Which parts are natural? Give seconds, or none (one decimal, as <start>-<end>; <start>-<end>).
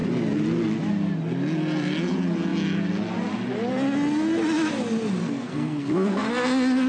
0.0-5.2; 6.3-6.9